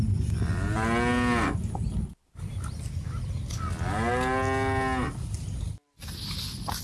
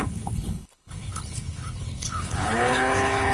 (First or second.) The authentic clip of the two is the first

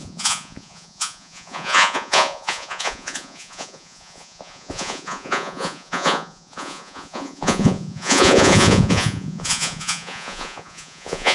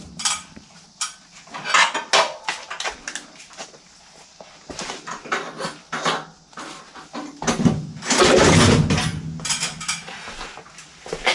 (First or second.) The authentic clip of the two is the second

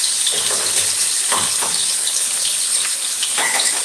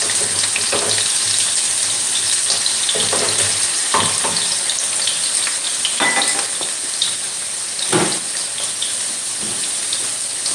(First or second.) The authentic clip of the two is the second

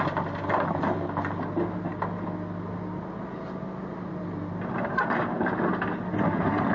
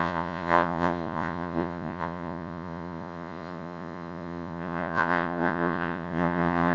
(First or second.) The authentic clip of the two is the first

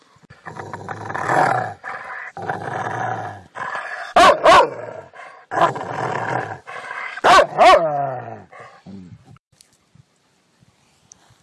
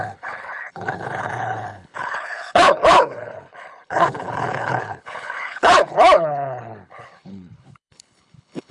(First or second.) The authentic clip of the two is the first